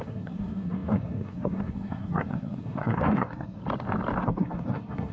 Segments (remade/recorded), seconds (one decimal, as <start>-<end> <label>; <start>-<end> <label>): 0.0-3.6 remade; 3.6-4.2 recorded; 4.2-5.1 remade

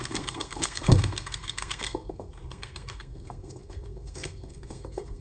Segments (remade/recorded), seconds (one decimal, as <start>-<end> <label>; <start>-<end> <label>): 0.0-5.2 remade